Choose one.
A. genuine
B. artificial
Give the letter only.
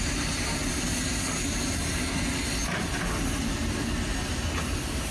A